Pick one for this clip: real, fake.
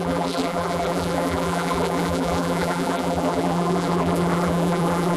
fake